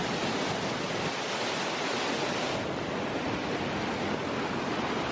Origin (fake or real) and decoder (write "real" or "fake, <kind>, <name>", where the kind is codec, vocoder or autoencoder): real